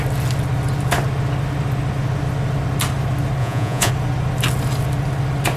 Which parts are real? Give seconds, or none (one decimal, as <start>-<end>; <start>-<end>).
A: 0.0-3.4; 3.9-5.6